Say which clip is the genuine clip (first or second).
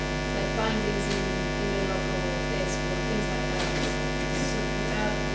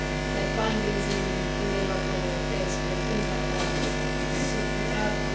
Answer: first